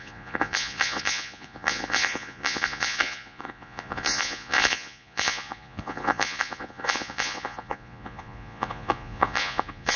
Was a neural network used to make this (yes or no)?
yes